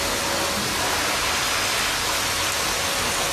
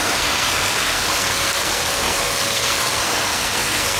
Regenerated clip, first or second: second